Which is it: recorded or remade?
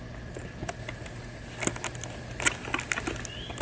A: recorded